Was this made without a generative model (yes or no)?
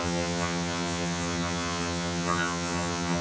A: no